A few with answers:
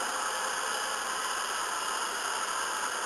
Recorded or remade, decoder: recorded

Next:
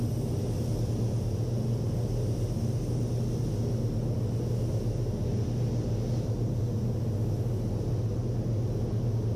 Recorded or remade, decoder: recorded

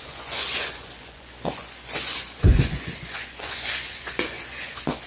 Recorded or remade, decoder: remade, vocoder, Vocos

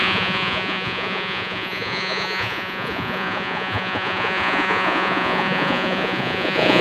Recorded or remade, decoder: remade, vocoder, Vocos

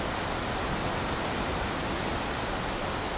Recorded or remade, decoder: recorded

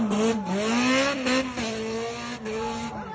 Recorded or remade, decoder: recorded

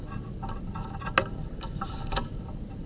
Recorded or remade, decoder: recorded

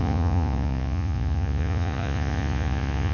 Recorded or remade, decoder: remade, vocoder, Vocos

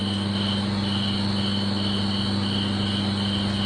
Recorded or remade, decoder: recorded